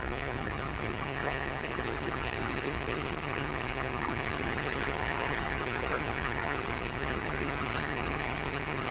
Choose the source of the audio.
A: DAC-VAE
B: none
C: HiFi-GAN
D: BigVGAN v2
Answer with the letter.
C